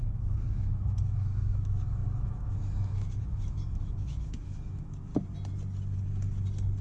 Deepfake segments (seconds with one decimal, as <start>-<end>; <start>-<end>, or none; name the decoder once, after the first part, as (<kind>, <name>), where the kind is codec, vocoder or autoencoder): 0.0-5.1 (autoencoder, DAC-VAE)